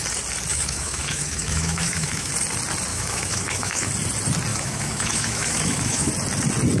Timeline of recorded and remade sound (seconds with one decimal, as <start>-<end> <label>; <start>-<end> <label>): 0.0-0.5 recorded; 0.5-2.3 remade; 2.3-2.9 recorded; 2.9-3.9 remade; 3.9-4.5 recorded; 4.5-6.1 remade; 6.1-6.8 recorded